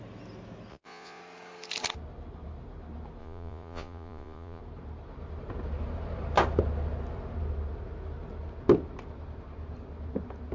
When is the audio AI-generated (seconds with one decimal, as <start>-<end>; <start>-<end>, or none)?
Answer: 0.7-1.2; 3.2-4.6